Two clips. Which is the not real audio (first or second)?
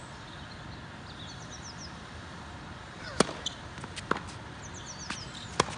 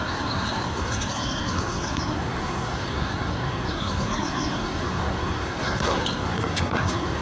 second